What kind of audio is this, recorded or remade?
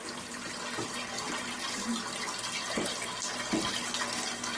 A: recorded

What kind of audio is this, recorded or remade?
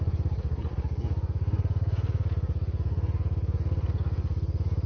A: recorded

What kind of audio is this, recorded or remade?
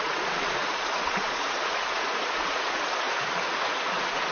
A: remade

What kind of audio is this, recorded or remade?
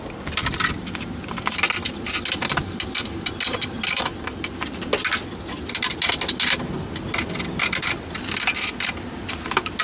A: recorded